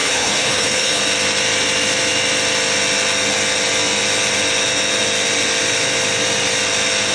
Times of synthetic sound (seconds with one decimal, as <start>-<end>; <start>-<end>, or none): 0.0-1.0